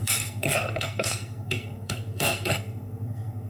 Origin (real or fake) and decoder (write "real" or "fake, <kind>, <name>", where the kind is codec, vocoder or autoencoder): fake, codec, SNAC